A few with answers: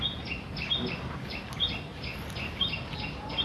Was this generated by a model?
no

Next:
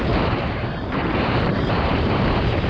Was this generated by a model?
yes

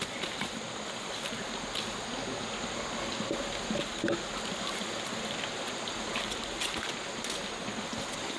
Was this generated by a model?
no